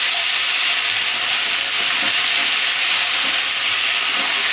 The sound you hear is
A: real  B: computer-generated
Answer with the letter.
A